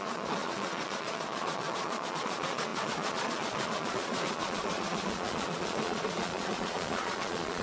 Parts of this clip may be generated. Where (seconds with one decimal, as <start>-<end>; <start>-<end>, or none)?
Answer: 0.0-7.6